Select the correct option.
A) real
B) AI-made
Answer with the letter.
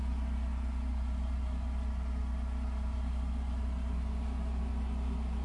A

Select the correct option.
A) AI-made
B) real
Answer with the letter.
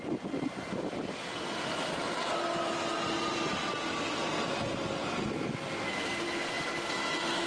B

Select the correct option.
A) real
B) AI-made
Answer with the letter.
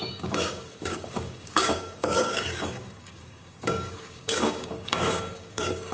B